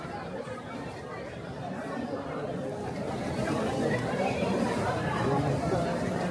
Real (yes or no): no